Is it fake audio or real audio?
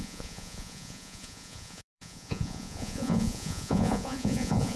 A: fake